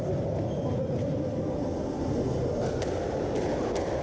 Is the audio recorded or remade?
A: recorded